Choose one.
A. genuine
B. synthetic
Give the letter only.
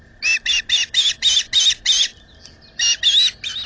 A